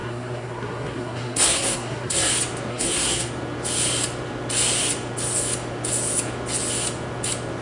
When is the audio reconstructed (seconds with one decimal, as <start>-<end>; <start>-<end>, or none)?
0.0-2.3; 2.7-3.3